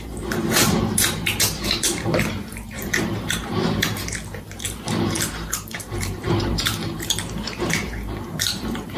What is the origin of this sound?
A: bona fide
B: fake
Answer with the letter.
B